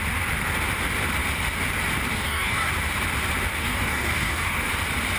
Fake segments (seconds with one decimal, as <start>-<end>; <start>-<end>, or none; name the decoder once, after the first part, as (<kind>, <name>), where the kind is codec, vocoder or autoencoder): 2.1-2.7 (codec, DAC); 3.6-4.7